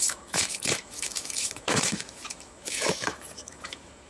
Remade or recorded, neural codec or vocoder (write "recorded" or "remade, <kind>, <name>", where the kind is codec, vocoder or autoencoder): remade, autoencoder, DAC-VAE